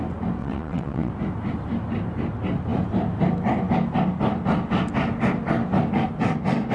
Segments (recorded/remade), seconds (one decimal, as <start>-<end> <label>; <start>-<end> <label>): 0.0-0.4 recorded; 0.4-1.1 remade; 1.1-6.7 recorded